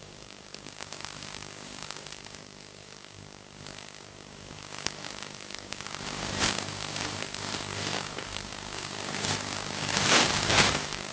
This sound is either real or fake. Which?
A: fake